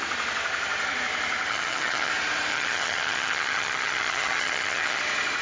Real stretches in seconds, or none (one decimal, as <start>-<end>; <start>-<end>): 0.0-1.5; 2.1-2.5; 5.0-5.4